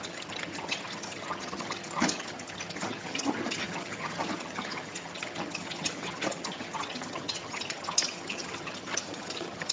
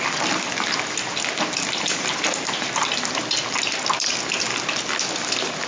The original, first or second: second